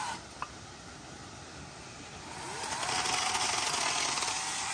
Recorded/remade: recorded